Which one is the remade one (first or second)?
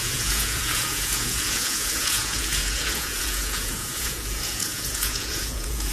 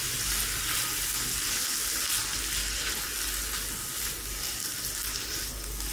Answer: first